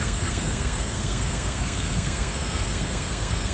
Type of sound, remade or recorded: remade